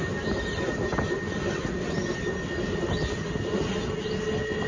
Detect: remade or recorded recorded